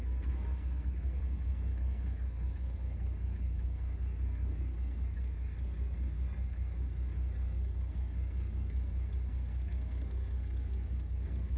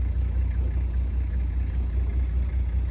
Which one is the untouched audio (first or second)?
second